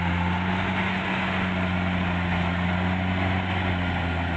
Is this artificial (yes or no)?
no